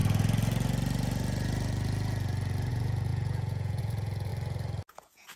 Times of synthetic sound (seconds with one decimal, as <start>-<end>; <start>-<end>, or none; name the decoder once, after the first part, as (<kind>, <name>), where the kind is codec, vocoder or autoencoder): 2.7-4.3 (vocoder, Vocos); 4.9-5.4